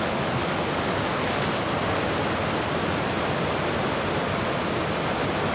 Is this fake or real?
real